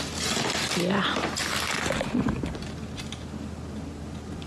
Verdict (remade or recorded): recorded